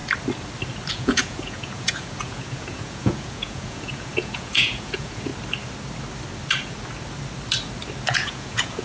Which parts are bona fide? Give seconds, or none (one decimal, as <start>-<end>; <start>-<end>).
0.0-0.9; 5.3-8.1